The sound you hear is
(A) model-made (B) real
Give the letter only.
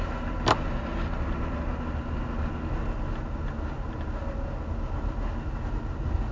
B